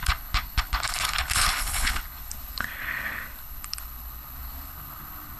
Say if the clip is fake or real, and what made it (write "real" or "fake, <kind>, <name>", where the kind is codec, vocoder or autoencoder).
fake, codec, HILCodec